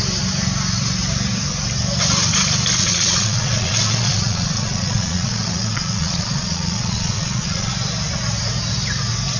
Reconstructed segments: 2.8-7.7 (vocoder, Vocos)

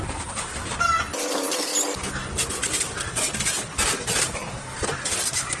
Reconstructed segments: 0.0-1.7 (vocoder, BigVGAN v2); 3.8-4.4

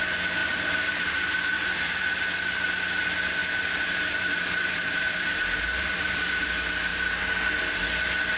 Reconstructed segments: 0.4-2.0 (vocoder, BigVGAN v2); 3.4-6.5; 6.9-7.6

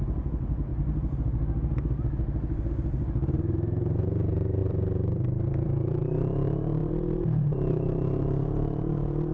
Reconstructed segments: 0.0-0.7 (vocoder, BigVGAN v2); 2.7-9.3

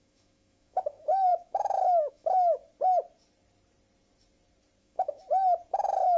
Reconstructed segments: 0.0-2.6 (autoencoder, DAC-VAE); 4.8-5.2; 5.7-6.2

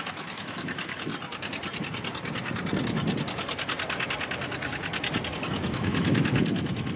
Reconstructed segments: 0.0-1.1 (autoencoder, DAC-VAE); 5.3-7.0

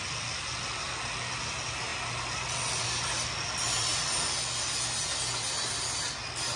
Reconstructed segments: none

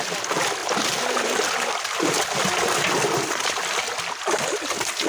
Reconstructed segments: none